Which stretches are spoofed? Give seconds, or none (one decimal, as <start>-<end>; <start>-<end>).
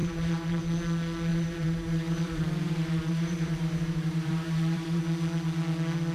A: 0.0-0.6; 1.3-5.0